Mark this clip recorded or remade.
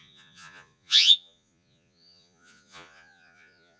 remade